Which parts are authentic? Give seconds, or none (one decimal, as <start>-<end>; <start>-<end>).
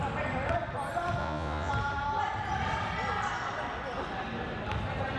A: 0.0-1.2; 1.7-5.2